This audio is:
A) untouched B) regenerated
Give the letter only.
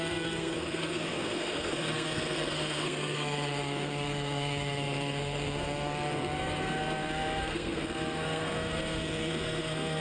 B